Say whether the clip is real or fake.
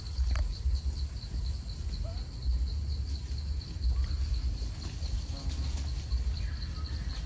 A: real